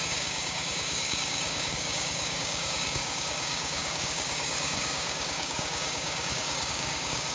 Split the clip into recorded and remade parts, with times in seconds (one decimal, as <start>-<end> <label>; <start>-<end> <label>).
0.0-7.3 remade